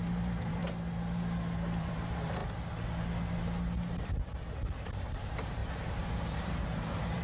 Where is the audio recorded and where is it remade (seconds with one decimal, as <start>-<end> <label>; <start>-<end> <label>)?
0.0-0.6 remade; 0.6-1.8 recorded; 1.8-2.4 remade; 2.4-4.0 recorded; 4.0-7.2 remade